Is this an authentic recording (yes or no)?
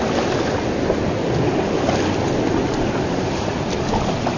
yes